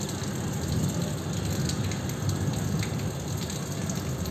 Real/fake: real